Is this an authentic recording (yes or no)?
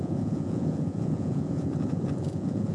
no